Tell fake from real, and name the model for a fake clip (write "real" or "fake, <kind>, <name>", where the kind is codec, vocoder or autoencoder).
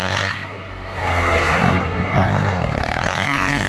fake, codec, SNAC